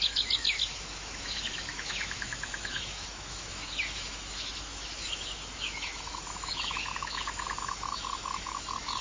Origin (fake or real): fake